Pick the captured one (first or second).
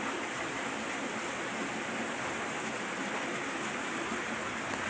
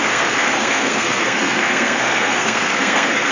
first